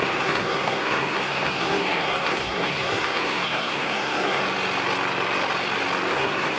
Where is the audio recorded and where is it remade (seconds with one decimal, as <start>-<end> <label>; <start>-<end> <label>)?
0.0-4.4 remade; 4.4-6.1 recorded; 6.1-6.6 remade